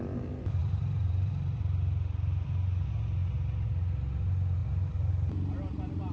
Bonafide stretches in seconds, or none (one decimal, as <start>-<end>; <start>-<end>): 0.0-0.6; 1.3-6.1